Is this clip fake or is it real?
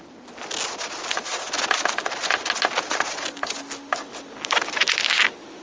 real